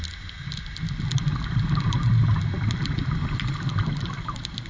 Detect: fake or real real